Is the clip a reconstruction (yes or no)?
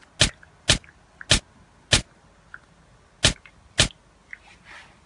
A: no